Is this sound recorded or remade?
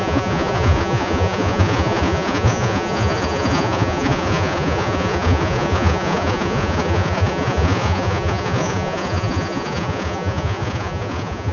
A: remade